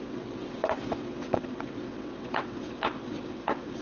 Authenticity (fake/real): fake